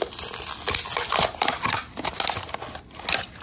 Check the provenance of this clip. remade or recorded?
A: recorded